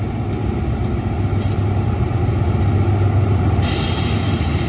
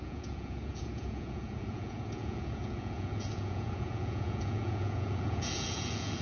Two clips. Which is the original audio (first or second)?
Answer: first